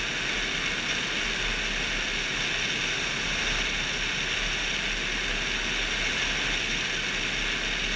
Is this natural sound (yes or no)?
yes